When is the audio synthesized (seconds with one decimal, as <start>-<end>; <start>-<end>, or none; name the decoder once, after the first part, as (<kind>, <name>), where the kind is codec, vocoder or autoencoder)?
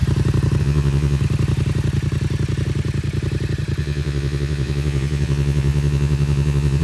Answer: 0.6-1.2 (vocoder, Vocos); 3.8-6.8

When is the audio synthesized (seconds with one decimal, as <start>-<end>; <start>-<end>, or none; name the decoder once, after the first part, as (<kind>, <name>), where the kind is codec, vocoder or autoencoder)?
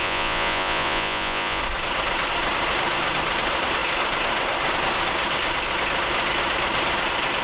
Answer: 0.0-1.6 (vocoder, Vocos)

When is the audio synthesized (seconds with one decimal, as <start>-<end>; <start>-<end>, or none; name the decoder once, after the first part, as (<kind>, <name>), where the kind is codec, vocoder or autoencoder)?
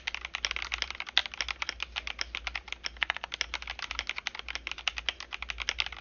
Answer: none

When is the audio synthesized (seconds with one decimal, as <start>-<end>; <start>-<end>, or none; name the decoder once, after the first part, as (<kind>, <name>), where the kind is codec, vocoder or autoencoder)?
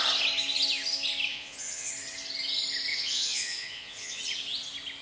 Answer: 1.3-1.9 (vocoder, Vocos); 2.9-4.2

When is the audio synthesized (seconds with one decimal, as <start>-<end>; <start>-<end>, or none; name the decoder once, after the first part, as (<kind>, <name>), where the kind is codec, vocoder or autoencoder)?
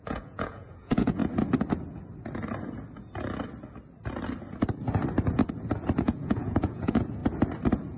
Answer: 0.0-1.2 (vocoder, Vocos); 6.0-7.2